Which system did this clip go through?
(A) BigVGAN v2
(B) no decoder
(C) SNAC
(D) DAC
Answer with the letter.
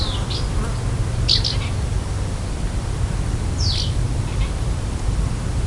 A